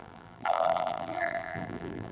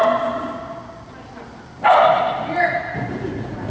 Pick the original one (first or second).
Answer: second